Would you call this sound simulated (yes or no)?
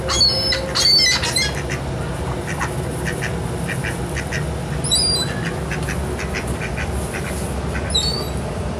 no